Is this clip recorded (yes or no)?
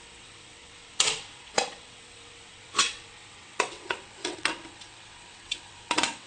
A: no